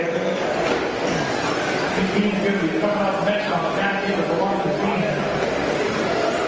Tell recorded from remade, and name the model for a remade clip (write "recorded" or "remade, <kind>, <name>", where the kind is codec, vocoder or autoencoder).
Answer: recorded